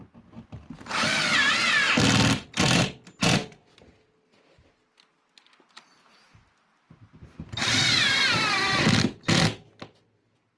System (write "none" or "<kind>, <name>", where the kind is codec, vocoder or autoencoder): none